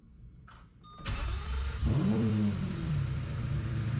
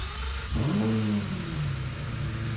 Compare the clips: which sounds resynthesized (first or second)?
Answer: first